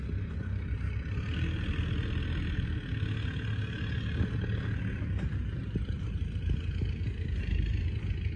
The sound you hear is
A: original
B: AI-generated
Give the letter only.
A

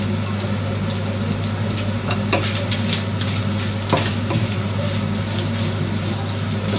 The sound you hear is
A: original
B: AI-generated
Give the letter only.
A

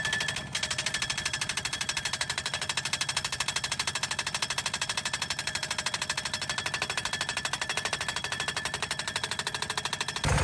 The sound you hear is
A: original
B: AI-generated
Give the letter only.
B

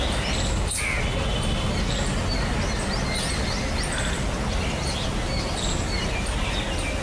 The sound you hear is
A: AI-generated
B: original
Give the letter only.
B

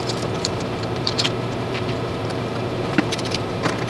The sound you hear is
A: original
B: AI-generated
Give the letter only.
B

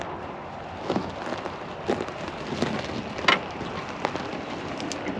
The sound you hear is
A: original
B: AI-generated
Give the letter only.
A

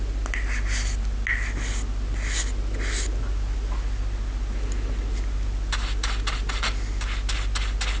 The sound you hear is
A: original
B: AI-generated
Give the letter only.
A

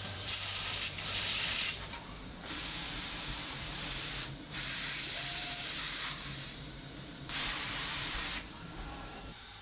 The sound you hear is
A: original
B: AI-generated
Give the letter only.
B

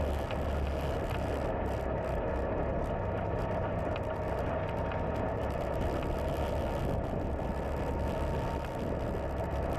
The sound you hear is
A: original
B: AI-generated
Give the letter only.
A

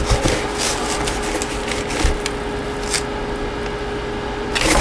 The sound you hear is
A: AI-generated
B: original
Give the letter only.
B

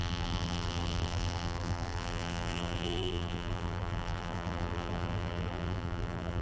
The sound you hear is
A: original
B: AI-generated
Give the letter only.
B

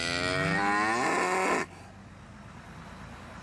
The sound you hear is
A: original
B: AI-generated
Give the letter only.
A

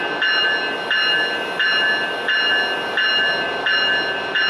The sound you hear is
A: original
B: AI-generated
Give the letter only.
A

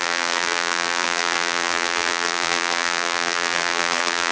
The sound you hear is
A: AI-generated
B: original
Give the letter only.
A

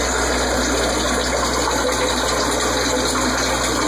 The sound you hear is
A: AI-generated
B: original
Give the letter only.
B